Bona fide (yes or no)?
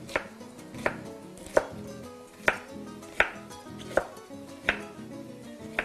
yes